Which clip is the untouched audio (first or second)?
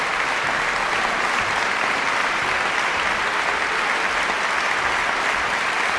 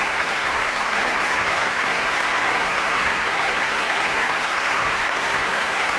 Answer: first